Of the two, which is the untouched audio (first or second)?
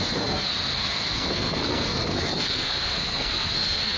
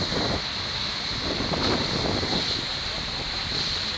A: second